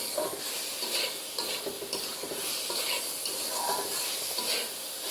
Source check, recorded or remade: recorded